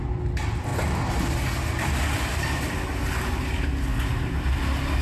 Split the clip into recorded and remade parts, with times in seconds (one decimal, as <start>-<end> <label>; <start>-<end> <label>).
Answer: 0.0-5.0 recorded